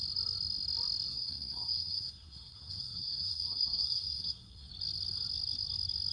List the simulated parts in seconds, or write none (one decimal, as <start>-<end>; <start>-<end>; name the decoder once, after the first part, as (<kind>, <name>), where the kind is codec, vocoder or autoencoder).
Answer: 1.1-4.7 (codec, SNAC)